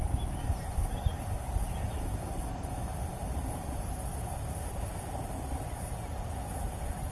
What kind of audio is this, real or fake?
real